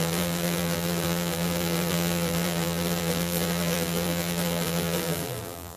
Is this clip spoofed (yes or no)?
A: yes